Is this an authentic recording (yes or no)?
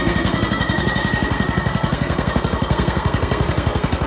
no